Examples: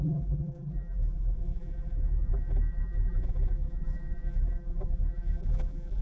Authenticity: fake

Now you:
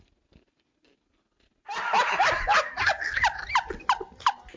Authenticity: real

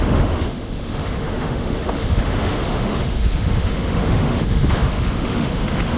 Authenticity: fake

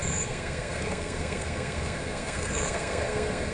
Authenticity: fake